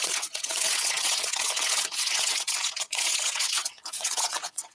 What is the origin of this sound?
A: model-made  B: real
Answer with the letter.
A